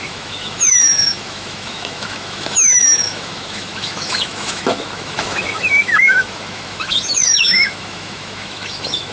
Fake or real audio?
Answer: fake